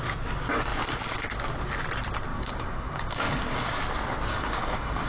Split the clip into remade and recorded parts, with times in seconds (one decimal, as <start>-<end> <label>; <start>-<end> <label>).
0.0-2.3 recorded; 2.3-3.4 remade; 3.4-4.3 recorded; 4.3-5.1 remade